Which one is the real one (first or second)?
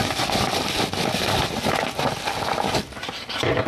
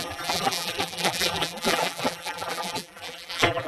first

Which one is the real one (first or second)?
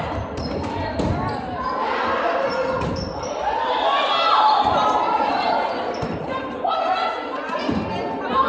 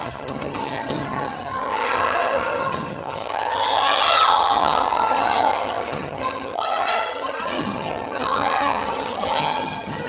first